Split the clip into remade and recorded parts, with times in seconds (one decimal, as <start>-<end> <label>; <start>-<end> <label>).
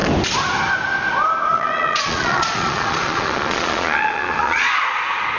0.0-1.5 recorded; 1.5-4.7 remade; 4.7-5.4 recorded